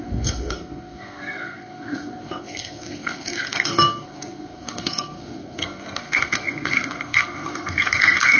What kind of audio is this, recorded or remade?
remade